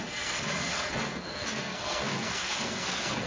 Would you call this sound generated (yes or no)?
yes